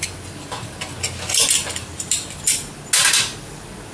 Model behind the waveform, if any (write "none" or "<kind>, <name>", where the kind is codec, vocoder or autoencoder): none